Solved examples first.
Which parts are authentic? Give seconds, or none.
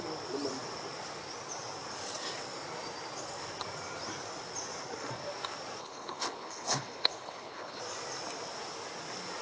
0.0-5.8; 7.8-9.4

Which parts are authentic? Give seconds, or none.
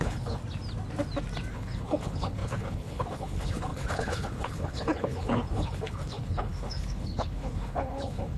0.4-1.5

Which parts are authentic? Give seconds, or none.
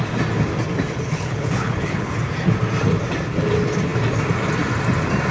0.0-1.1; 2.1-5.3